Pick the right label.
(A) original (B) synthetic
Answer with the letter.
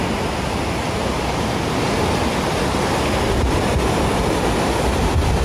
A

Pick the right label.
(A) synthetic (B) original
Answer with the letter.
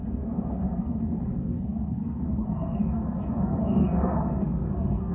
A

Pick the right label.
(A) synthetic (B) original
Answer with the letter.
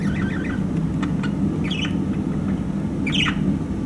B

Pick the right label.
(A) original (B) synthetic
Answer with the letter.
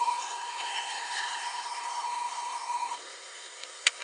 B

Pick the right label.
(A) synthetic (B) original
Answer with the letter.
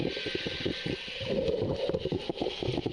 B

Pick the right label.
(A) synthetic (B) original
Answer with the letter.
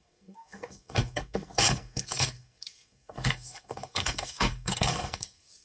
A